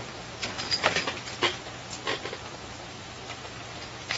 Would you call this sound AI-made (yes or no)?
no